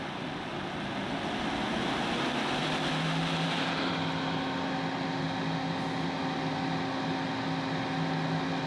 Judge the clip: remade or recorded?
recorded